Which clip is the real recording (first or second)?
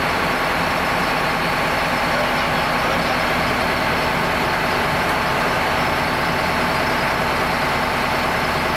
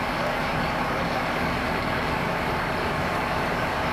first